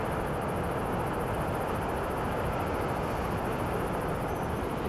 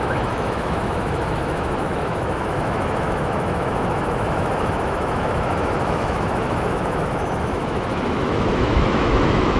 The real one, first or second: first